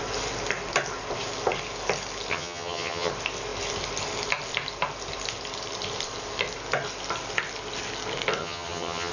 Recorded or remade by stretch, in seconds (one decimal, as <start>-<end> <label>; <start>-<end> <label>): 0.0-2.3 recorded; 2.3-3.1 remade; 3.1-8.4 recorded; 8.4-9.1 remade